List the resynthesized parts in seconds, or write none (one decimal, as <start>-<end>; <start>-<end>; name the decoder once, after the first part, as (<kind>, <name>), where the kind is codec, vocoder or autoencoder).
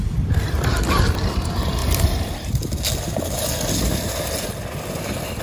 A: none